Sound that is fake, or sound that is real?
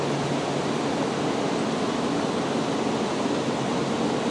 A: real